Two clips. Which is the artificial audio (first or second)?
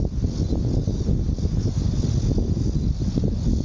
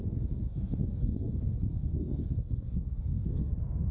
second